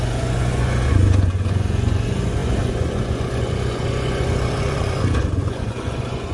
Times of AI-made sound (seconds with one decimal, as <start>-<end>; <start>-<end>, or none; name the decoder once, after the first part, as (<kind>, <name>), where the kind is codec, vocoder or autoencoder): 0.0-6.3 (vocoder, Vocos)